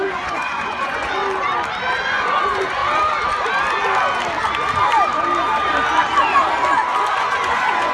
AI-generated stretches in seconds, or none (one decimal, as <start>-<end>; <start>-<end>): 0.0-1.2; 1.9-2.8; 7.1-7.9

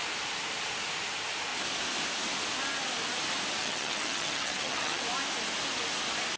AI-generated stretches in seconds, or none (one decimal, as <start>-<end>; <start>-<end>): 3.6-5.0

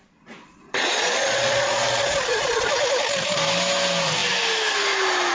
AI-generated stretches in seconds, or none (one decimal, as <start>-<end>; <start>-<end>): 0.0-2.7

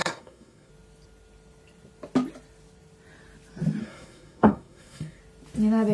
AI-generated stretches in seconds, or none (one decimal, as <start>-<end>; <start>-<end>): 0.0-0.7; 3.8-5.2

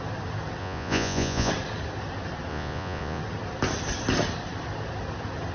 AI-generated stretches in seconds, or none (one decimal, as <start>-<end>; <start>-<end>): 0.6-1.5; 2.5-3.2

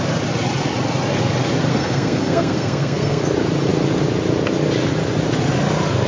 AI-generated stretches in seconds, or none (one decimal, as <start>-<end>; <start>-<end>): 1.7-3.2